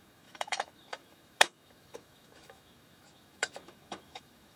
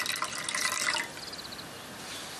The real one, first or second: second